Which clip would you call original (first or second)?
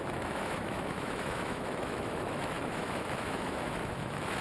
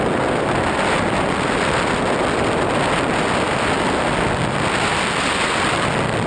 second